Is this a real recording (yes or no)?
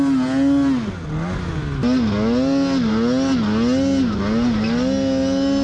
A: yes